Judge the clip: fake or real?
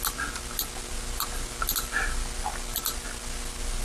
real